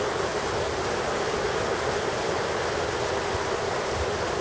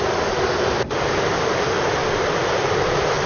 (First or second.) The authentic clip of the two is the first